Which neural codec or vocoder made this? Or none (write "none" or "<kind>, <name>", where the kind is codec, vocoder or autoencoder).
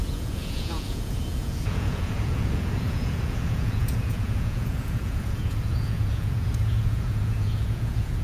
vocoder, Vocos